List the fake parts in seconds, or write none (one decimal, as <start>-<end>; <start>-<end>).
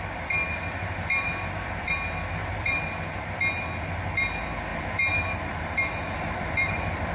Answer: 0.4-1.9; 2.4-3.2; 4.7-7.1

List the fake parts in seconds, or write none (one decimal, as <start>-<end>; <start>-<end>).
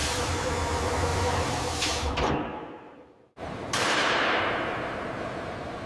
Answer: 0.0-0.5; 1.1-4.4